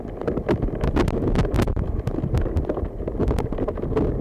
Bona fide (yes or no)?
yes